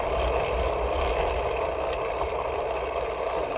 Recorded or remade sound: recorded